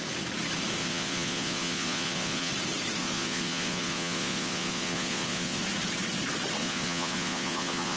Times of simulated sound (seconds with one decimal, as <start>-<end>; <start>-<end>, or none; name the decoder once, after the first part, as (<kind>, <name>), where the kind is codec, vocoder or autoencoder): 0.8-2.5 (vocoder, Vocos); 3.0-5.6; 6.6-8.0